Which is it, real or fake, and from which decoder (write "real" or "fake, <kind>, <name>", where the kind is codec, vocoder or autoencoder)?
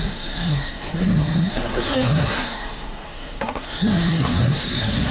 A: fake, codec, SNAC